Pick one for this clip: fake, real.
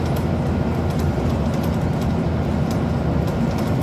real